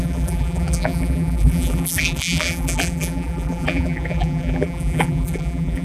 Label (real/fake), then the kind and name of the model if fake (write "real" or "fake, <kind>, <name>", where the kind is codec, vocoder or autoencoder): fake, vocoder, BigVGAN v2